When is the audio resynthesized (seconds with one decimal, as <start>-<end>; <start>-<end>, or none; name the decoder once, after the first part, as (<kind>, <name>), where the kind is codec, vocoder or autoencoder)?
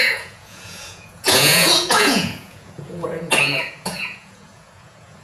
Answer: 0.0-5.2 (vocoder, Vocos)